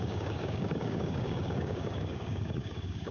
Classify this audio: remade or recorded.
remade